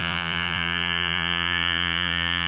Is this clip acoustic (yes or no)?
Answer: no